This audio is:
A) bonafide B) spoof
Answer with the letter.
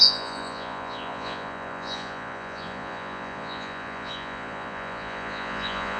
B